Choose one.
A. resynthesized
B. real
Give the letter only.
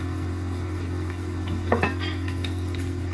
A